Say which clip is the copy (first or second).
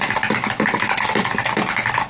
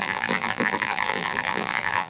second